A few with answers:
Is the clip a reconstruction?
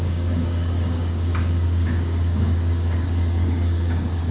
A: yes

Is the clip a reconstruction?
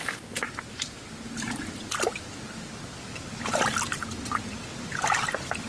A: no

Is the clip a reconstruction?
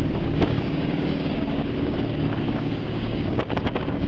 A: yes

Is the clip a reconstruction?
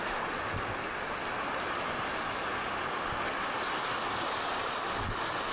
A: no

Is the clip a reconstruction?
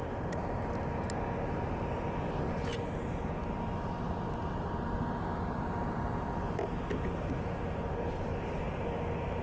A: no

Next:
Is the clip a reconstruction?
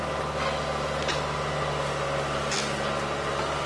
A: no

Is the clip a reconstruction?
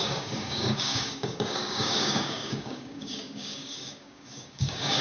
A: yes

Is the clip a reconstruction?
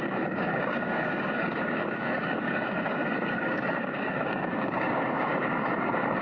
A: yes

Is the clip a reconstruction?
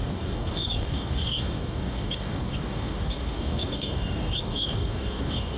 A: yes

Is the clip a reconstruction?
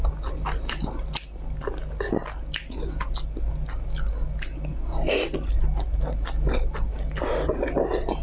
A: no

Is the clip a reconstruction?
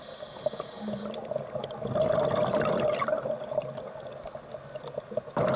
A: no